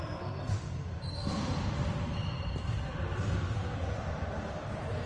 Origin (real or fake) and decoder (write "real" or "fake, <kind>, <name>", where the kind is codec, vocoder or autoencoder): fake, vocoder, BigVGAN v2